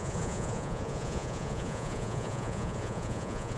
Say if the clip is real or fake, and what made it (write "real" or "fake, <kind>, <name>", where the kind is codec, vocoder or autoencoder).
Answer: fake, vocoder, Vocos